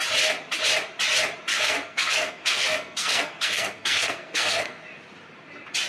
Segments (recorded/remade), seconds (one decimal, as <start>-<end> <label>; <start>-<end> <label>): 0.0-1.5 recorded; 1.5-4.8 remade; 4.8-5.9 recorded